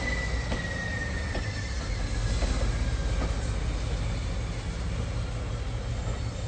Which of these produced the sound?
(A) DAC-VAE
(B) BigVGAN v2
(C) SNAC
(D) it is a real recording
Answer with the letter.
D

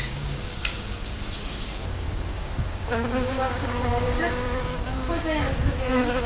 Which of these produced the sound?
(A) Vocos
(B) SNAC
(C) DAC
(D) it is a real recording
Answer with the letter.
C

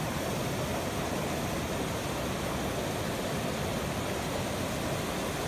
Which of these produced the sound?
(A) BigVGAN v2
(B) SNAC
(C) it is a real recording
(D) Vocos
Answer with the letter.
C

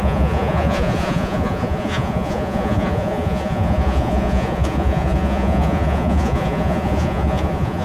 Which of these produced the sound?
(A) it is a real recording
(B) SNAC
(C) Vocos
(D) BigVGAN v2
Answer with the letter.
C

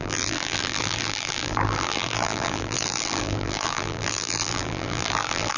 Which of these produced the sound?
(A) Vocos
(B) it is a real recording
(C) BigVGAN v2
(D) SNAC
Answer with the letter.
C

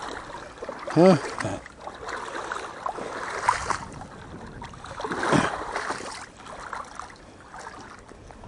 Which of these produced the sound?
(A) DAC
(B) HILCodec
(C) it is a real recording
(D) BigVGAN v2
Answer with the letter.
C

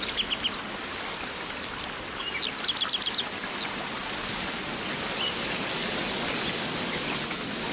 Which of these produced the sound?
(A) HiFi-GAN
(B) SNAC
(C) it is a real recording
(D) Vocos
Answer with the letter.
C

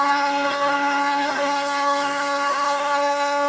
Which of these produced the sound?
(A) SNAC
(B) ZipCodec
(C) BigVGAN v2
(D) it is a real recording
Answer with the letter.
A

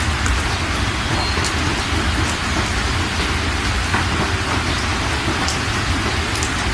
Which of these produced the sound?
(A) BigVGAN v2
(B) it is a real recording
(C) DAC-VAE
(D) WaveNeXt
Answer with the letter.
B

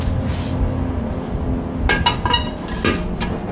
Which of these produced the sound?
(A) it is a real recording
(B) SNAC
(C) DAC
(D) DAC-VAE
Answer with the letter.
A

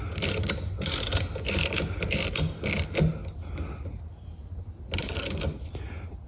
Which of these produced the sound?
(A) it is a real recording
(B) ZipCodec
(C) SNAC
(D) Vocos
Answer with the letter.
A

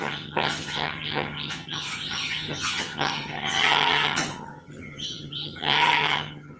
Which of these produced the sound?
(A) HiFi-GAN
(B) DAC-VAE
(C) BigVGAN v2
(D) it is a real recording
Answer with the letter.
A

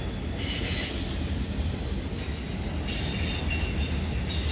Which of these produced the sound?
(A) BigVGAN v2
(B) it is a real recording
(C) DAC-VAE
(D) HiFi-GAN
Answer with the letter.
B